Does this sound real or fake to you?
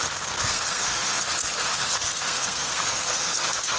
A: fake